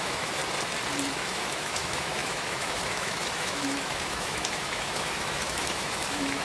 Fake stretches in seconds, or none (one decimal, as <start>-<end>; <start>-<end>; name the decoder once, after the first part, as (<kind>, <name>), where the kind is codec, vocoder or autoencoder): 0.0-0.4 (autoencoder, DAC-VAE); 1.1-6.4